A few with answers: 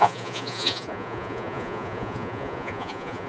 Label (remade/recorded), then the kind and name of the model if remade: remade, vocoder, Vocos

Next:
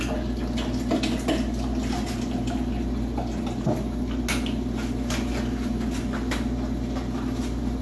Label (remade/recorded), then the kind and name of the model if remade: recorded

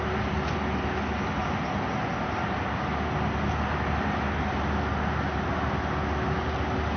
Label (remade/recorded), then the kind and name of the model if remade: recorded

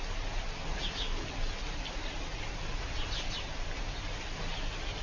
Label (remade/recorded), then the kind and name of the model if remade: recorded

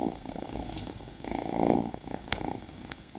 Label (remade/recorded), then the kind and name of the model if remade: remade, codec, SNAC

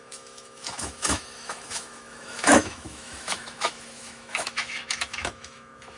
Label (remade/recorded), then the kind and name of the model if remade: remade, autoencoder, DAC-VAE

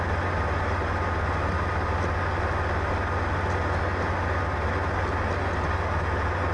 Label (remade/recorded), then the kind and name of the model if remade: recorded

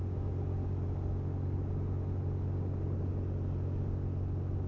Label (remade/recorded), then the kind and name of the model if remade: recorded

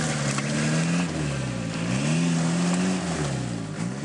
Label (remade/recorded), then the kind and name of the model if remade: recorded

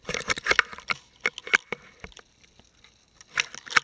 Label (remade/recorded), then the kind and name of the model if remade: recorded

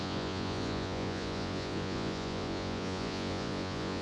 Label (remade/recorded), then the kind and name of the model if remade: remade, vocoder, Vocos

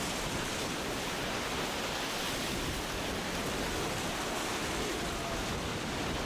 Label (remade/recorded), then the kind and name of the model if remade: recorded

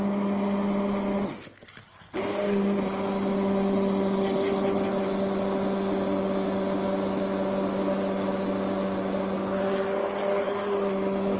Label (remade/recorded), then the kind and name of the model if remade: recorded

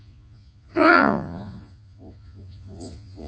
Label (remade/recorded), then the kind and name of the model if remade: remade, vocoder, Vocos